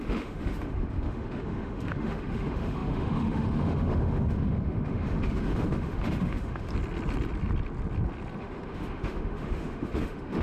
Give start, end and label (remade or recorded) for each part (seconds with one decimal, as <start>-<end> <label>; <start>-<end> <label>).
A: 0.0-6.7 remade; 6.7-8.4 recorded; 8.4-10.4 remade